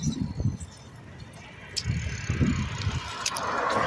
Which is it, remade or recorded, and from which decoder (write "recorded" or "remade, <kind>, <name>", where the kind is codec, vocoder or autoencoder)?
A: recorded